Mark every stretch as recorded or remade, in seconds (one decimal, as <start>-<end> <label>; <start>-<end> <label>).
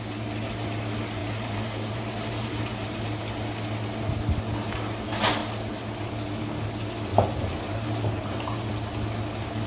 0.0-1.2 recorded; 1.2-3.2 remade; 3.2-7.1 recorded; 7.1-8.7 remade; 8.7-9.7 recorded